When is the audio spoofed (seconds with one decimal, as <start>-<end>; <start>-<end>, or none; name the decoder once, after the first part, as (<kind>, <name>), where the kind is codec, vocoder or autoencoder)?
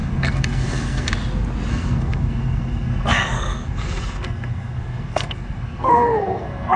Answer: 0.0-1.1 (codec, SNAC); 1.7-6.8